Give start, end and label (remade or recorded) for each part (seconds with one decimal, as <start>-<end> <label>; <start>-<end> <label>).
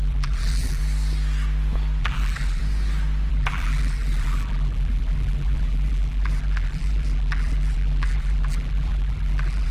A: 0.0-0.8 remade; 0.8-2.0 recorded; 2.0-2.6 remade; 2.6-3.3 recorded; 3.3-9.7 remade